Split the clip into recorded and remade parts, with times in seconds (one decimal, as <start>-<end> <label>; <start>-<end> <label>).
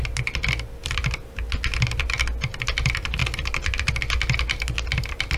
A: 0.0-5.4 recorded